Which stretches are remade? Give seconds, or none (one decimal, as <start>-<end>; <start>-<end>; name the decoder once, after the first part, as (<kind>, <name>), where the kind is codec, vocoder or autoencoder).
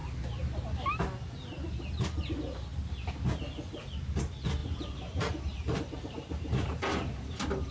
4.6-7.3 (vocoder, BigVGAN v2)